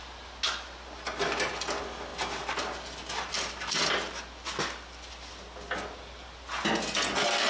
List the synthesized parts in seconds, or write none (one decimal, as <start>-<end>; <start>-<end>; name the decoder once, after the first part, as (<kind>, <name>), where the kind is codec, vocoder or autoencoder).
none